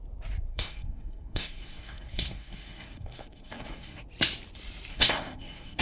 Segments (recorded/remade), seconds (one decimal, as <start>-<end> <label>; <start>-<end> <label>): 0.0-0.5 recorded; 0.5-4.0 remade; 4.0-4.9 recorded; 4.9-5.8 remade